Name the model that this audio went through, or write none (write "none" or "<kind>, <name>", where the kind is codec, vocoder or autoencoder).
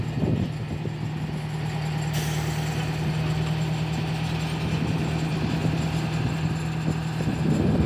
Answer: none